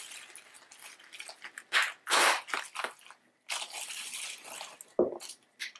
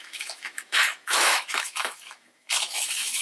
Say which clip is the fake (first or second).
second